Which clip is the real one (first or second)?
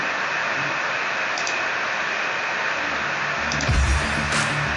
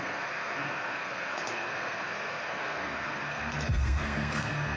first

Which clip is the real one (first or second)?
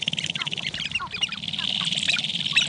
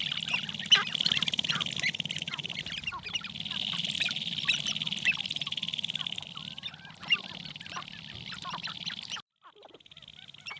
second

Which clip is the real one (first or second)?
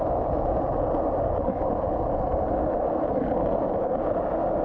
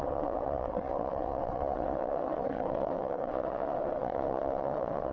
first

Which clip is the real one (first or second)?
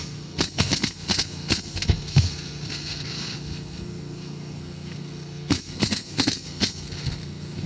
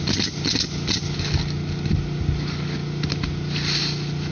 second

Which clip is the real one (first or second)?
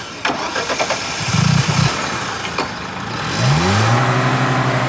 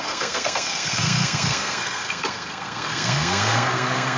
first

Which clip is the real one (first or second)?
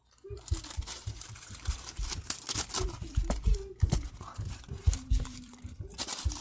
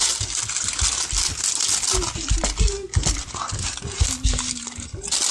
second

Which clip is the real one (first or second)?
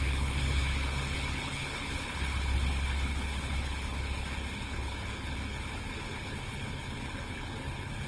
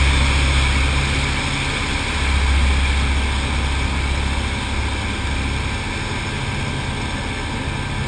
second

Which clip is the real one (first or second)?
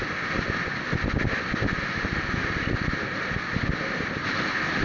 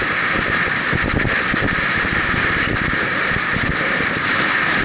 first